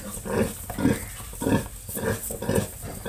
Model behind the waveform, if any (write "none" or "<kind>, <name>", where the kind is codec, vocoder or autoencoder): none